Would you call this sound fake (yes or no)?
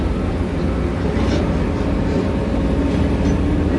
no